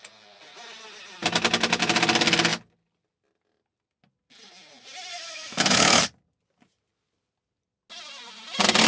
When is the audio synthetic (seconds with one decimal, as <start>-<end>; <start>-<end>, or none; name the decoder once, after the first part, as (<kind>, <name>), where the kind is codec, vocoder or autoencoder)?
5.1-6.0 (autoencoder, DAC-VAE)